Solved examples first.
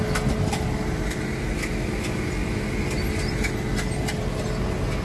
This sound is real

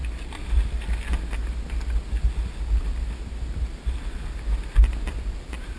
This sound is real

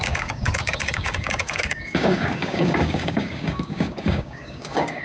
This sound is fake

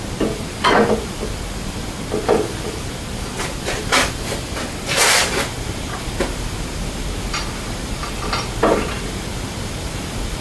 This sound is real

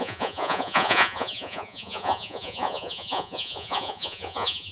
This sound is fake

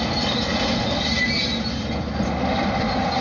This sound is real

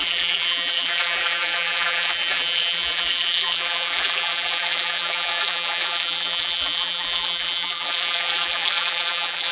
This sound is fake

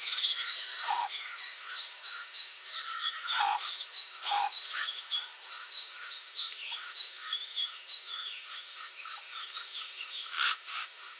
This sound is fake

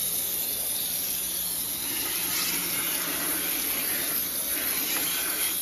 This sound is real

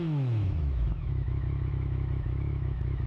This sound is fake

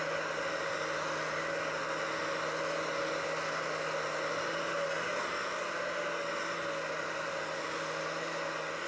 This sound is real